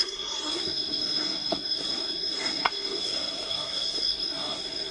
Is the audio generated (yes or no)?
yes